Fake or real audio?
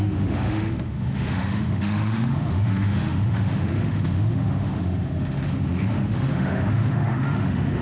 fake